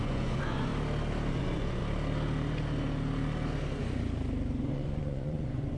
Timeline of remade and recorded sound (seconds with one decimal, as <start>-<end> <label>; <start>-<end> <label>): 0.0-0.7 remade; 0.7-1.3 recorded; 1.3-1.8 remade; 1.8-4.6 recorded; 4.6-5.8 remade